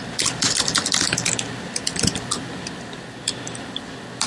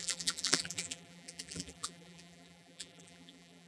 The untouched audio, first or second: first